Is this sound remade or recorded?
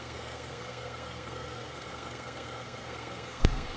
remade